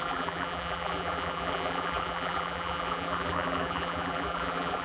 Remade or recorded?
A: remade